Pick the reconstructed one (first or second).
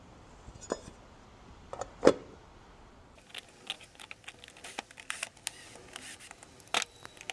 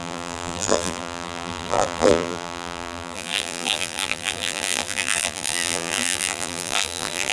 second